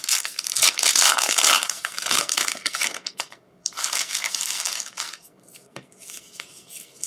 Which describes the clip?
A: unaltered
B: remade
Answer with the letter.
B